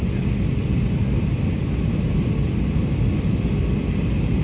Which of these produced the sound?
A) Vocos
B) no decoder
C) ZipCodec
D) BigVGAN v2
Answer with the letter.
B